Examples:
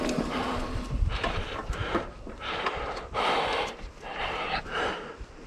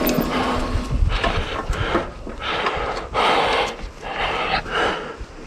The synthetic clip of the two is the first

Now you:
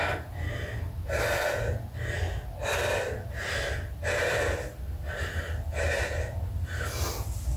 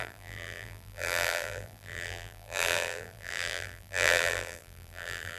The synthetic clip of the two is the second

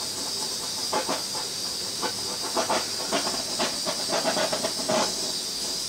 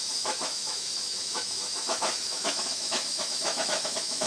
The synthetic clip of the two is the second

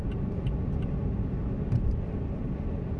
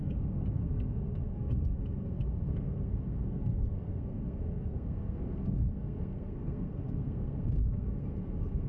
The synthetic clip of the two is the second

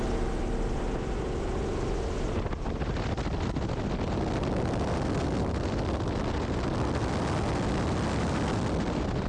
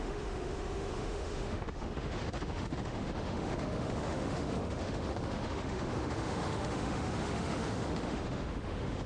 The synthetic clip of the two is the second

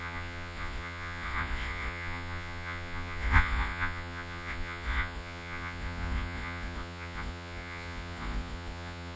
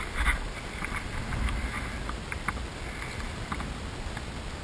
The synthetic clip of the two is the first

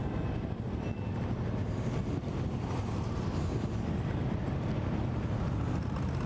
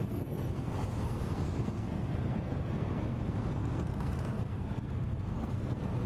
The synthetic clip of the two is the second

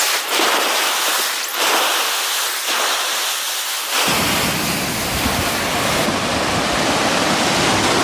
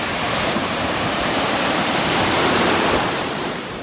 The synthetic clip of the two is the second